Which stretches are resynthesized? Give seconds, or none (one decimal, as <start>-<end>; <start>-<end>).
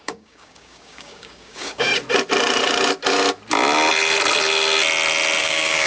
0.0-1.9; 5.4-5.9